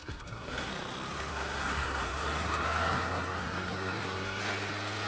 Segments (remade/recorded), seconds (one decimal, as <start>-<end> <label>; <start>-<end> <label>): 0.0-0.7 remade; 0.7-1.3 recorded; 1.3-4.4 remade; 4.4-5.1 recorded